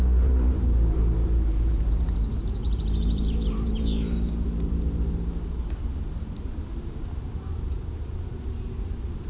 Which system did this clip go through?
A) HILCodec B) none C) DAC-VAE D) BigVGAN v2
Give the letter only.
D